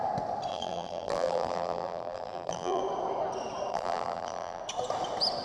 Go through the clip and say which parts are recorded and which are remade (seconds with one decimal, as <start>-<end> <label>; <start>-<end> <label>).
0.0-0.5 recorded; 0.5-2.8 remade; 2.8-3.7 recorded; 3.7-4.6 remade; 4.6-5.4 recorded